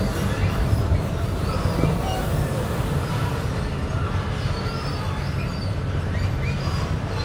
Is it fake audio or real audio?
fake